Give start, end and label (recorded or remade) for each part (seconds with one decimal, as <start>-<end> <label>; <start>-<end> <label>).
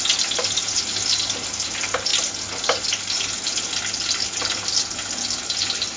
0.0-6.0 recorded